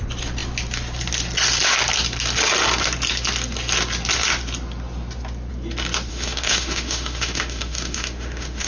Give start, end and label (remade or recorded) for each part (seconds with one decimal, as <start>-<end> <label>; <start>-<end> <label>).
0.0-6.1 recorded; 6.1-8.7 remade